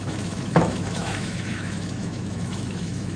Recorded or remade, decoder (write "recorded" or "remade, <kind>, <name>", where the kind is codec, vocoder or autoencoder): remade, autoencoder, DAC-VAE